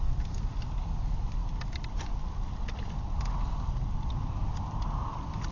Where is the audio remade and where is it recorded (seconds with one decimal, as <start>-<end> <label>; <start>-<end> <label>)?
0.0-5.5 recorded

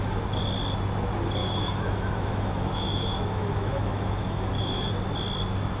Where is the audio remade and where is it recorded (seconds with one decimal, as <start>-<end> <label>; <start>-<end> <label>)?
0.0-1.4 recorded; 1.4-4.9 remade; 4.9-5.8 recorded

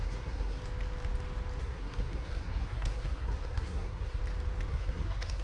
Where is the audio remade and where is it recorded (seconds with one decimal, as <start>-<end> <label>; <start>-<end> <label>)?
0.0-0.6 remade; 0.6-1.6 recorded; 1.6-4.2 remade; 4.2-4.7 recorded; 4.7-5.4 remade

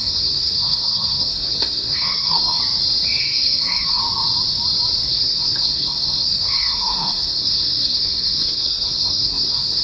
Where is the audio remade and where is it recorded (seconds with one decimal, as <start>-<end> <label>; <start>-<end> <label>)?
0.0-2.6 remade; 2.6-3.2 recorded; 3.2-4.0 remade; 4.0-5.1 recorded; 5.1-9.8 remade

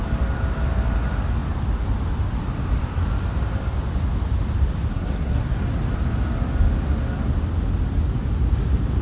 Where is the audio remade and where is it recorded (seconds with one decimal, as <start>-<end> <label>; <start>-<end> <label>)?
0.0-4.9 recorded; 4.9-5.6 remade; 5.6-9.0 recorded

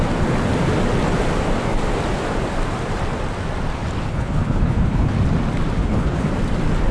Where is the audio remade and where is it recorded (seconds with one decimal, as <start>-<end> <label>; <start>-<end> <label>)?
0.0-4.1 recorded; 4.1-5.1 remade; 5.1-5.8 recorded; 5.8-6.3 remade; 6.3-6.9 recorded